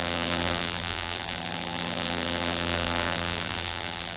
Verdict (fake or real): fake